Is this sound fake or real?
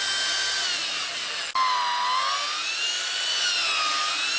real